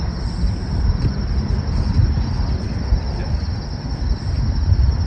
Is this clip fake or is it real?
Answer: real